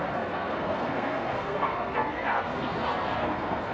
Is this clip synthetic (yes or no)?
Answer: yes